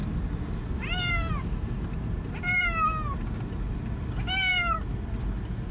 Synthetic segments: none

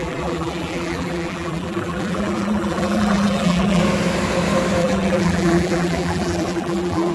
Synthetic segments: 0.0-3.8 (vocoder, BigVGAN v2); 4.8-7.1